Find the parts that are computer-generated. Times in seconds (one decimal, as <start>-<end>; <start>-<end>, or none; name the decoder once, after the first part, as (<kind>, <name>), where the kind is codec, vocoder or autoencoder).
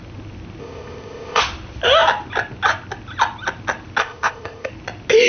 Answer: 0.6-1.4 (codec, ZipCodec); 4.0-4.7